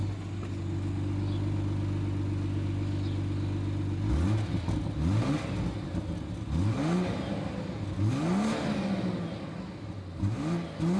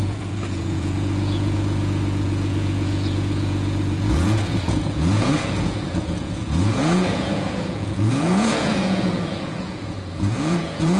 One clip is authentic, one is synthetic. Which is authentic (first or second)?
first